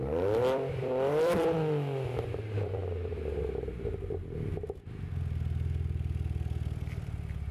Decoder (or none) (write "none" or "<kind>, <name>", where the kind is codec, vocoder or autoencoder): vocoder, BigVGAN v2